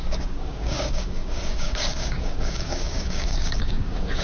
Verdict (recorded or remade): remade